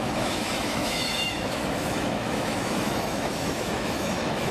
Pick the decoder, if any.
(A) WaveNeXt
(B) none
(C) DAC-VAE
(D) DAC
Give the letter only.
C